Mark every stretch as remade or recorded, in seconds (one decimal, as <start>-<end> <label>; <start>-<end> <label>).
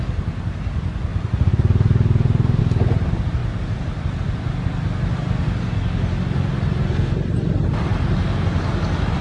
0.0-3.4 recorded; 3.4-4.2 remade; 4.2-9.2 recorded